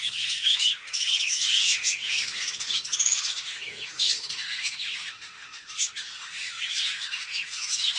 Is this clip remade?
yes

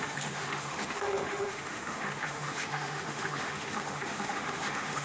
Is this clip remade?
yes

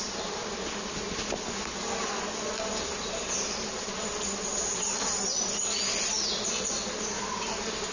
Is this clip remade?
no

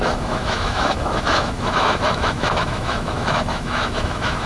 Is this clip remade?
yes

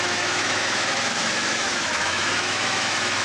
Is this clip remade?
yes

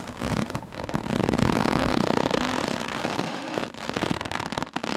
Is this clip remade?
yes